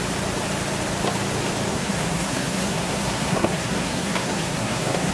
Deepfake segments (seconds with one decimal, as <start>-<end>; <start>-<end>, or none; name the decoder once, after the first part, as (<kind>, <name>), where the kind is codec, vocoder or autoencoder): 1.7-5.1 (codec, SNAC)